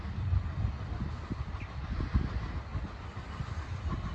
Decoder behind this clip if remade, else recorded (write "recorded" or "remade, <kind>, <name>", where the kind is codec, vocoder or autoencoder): recorded